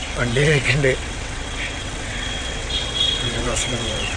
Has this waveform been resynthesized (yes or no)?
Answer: yes